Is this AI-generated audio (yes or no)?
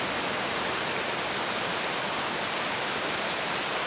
yes